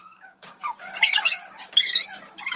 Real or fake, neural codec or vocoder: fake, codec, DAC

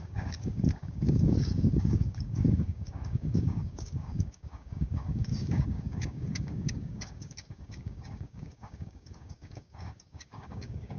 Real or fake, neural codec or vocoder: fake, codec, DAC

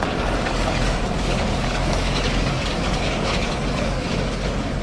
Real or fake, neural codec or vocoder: fake, codec, DAC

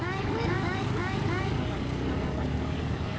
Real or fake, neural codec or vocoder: fake, codec, DAC